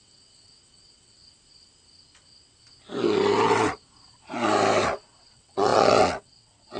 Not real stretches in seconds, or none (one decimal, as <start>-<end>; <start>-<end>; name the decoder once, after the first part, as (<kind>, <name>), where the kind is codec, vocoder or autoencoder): 0.0-1.2 (vocoder, WaveNeXt); 5.2-6.8